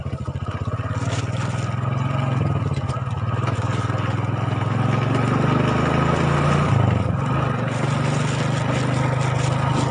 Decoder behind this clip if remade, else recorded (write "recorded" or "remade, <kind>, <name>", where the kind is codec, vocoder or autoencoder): recorded